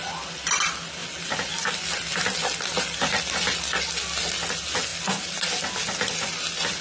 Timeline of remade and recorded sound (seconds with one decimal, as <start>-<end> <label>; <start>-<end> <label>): 0.0-6.8 recorded

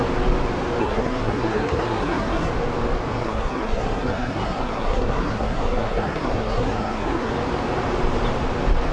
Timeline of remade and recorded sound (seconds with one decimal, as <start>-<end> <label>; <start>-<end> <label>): 0.0-0.8 recorded; 0.8-2.5 remade; 2.5-3.1 recorded; 3.1-7.3 remade; 7.3-8.9 recorded

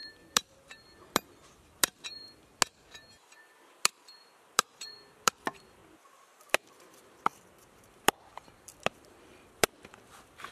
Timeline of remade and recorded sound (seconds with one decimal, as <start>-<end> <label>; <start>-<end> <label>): 0.0-2.4 remade; 2.4-3.1 recorded; 3.1-5.8 remade; 5.8-6.7 recorded; 6.7-10.5 remade

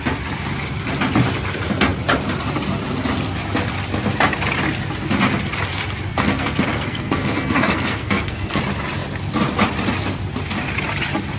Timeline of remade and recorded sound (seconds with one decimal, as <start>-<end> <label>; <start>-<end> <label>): 0.0-6.1 recorded; 6.1-8.6 remade; 8.6-11.4 recorded

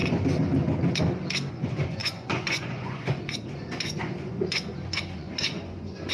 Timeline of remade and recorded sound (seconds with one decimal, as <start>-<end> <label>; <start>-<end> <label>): 0.0-1.5 recorded; 1.5-6.1 remade